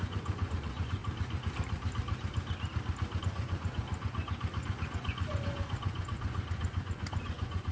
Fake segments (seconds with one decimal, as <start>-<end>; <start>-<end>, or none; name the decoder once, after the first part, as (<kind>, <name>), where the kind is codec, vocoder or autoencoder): 0.0-1.0 (vocoder, Vocos); 3.2-3.9; 4.6-7.7